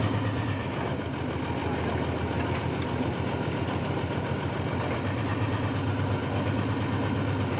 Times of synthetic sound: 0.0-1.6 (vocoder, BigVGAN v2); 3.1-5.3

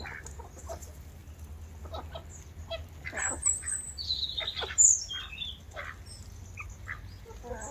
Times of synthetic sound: none